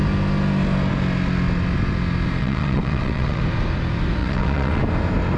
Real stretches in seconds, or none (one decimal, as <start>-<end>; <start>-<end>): 0.0-2.4; 3.4-4.2; 4.8-5.4